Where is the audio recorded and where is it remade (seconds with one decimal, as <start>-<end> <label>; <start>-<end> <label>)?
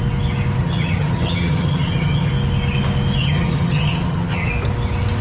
0.0-0.6 recorded; 0.6-2.3 remade; 2.3-3.2 recorded; 3.2-4.5 remade; 4.5-5.2 recorded